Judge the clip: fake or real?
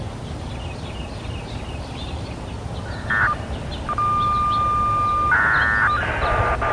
real